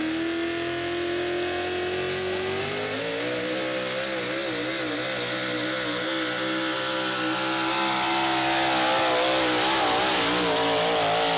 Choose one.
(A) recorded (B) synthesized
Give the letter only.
A